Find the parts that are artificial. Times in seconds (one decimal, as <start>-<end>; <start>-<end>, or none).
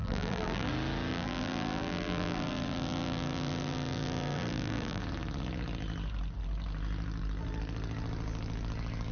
0.0-0.7; 1.1-5.0